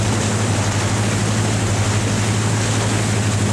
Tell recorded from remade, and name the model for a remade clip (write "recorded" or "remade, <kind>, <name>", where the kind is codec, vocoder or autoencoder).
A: recorded